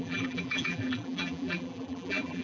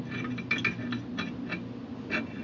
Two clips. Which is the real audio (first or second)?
second